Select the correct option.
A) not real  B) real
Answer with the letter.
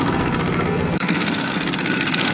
A